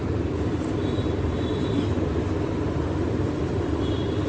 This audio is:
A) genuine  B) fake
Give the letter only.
B